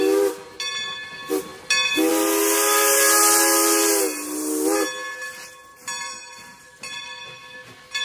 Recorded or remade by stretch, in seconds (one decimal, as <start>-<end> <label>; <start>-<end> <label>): 0.0-5.7 recorded; 5.7-6.8 remade; 6.8-8.0 recorded